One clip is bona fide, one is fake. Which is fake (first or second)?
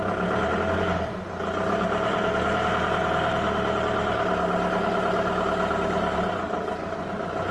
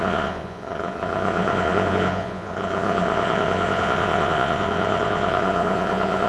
second